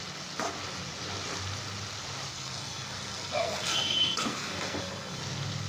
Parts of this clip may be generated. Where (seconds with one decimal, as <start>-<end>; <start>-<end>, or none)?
2.3-5.2